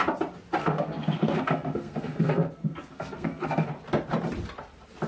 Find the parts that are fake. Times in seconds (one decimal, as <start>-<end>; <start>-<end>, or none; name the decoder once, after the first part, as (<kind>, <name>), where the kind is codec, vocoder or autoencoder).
0.6-3.7 (codec, SNAC)